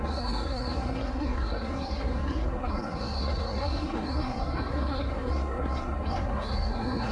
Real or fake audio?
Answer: fake